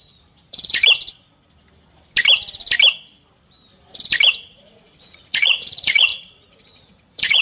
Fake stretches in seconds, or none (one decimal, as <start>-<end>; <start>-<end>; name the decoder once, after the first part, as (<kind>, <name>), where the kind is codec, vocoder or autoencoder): 0.0-0.8 (vocoder, Vocos); 4.3-7.4